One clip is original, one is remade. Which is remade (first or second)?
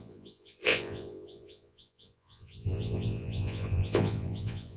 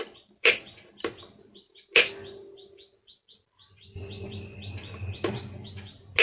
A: first